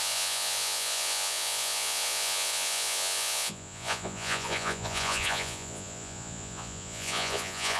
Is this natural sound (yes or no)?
no